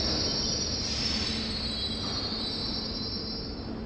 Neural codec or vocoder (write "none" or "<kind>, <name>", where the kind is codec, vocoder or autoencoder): none